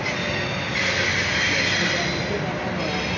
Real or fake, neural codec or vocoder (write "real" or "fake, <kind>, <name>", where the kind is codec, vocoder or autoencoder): real